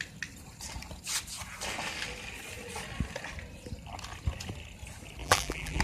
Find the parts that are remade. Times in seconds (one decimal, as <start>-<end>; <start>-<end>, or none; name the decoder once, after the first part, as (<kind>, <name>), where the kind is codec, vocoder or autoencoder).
5.2-5.8 (vocoder, BigVGAN v2)